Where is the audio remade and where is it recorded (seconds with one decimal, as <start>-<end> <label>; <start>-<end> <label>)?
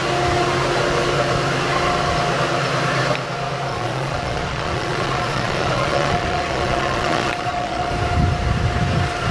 0.0-3.7 recorded; 3.7-7.9 remade; 7.9-9.3 recorded